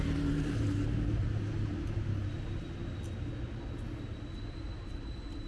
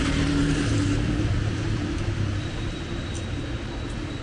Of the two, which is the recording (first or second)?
first